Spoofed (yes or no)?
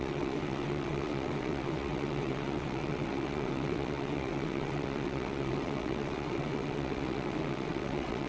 yes